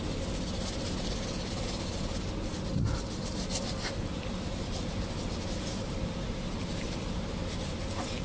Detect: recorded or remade recorded